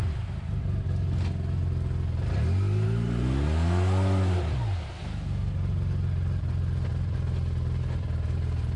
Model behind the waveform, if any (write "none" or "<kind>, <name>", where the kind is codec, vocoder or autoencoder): none